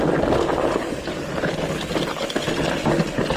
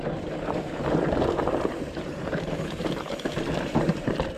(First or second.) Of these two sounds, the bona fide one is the first